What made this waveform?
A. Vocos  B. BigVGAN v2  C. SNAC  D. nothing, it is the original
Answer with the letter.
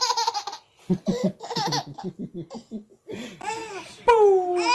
D